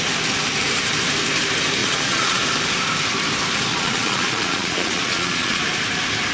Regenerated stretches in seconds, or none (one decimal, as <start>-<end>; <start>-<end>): 1.8-2.4; 3.7-5.6